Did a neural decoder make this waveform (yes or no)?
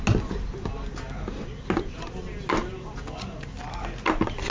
no